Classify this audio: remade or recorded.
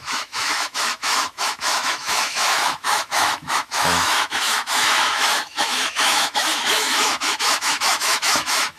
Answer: remade